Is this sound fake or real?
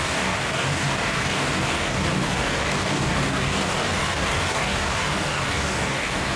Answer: fake